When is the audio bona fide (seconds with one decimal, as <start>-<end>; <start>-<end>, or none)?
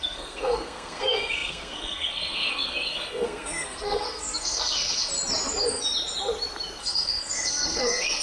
5.1-6.8